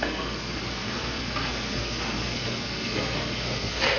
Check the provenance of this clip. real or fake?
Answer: fake